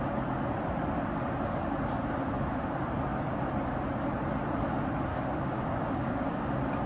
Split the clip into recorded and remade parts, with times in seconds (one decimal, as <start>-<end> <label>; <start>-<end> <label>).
0.0-5.1 recorded; 5.1-6.5 remade; 6.5-6.9 recorded